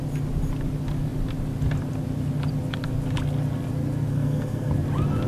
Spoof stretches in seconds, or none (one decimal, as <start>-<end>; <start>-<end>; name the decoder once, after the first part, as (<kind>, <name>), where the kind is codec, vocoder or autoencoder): 4.1-4.7 (codec, SNAC)